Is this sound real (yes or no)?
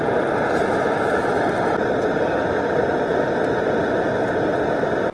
yes